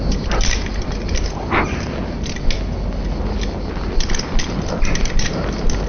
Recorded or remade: recorded